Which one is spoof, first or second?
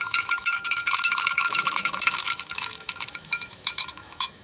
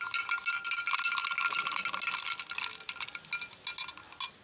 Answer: first